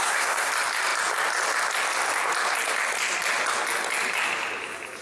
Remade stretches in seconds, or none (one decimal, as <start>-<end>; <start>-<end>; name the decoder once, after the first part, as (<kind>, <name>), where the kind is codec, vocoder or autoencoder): 0.0-0.5 (codec, SNAC)

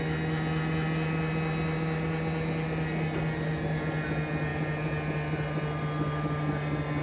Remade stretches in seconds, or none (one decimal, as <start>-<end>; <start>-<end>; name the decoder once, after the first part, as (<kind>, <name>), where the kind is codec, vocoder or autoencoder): none

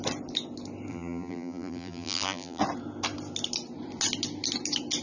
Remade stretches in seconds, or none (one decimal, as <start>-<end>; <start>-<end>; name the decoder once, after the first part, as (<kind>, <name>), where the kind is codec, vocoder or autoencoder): 0.9-2.6 (vocoder, BigVGAN v2)

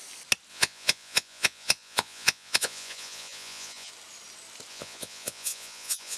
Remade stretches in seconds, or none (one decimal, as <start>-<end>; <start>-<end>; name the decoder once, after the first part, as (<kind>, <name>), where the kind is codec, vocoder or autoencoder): 0.5-3.9 (vocoder, Vocos); 4.7-6.2

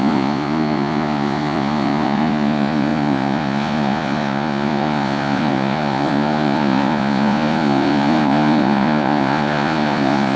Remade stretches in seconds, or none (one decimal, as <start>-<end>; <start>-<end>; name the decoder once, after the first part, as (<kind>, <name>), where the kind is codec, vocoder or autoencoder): 0.0-10.4 (vocoder, Vocos)

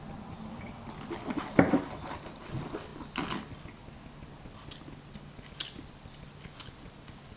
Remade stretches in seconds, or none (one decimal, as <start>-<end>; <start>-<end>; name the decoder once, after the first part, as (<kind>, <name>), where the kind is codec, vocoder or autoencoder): none

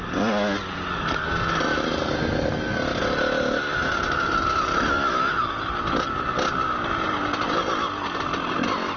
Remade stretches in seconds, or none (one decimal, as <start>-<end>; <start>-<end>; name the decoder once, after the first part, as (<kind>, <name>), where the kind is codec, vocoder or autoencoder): none

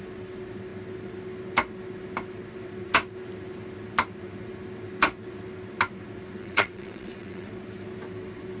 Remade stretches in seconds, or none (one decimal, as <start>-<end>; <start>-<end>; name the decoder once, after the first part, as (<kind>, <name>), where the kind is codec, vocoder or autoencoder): 6.4-7.5 (vocoder, WaveNeXt)